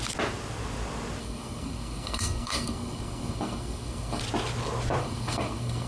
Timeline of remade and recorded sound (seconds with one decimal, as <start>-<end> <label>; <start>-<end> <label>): 0.0-1.2 recorded; 1.2-4.2 remade; 4.2-5.0 recorded; 5.0-5.9 remade